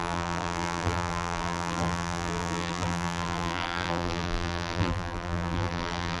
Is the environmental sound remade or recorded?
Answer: remade